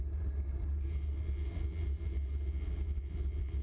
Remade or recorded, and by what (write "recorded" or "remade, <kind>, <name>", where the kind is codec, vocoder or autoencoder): recorded